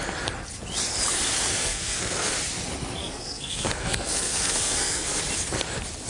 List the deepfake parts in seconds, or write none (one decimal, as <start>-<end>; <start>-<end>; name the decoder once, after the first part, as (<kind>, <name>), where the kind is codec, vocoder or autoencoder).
1.5-2.3 (codec, SNAC); 3.0-5.2